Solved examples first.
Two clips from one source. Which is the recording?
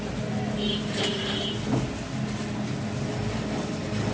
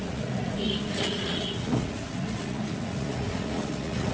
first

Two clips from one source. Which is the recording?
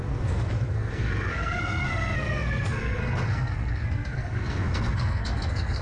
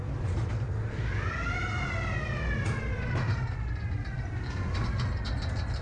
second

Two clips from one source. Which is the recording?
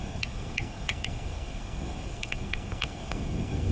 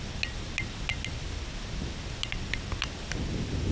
second